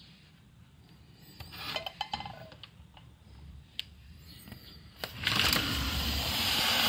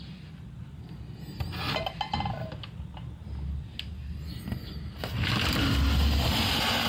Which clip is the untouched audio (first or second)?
second